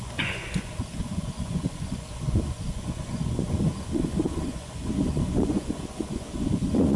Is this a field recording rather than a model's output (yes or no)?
no